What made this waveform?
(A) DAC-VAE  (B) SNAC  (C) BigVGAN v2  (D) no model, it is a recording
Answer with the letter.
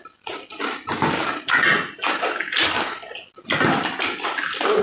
D